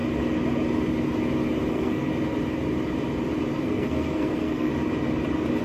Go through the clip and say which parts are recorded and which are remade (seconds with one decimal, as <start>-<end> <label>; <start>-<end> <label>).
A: 0.0-1.7 recorded; 1.7-2.1 remade; 2.1-3.6 recorded; 3.6-4.7 remade; 4.7-5.6 recorded